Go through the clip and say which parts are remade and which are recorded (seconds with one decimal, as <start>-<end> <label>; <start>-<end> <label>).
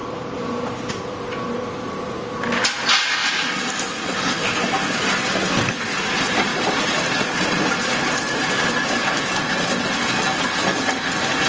0.0-0.9 remade; 0.9-6.5 recorded; 6.5-8.5 remade; 8.5-11.5 recorded